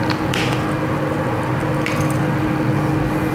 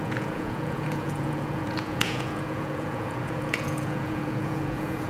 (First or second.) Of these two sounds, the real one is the first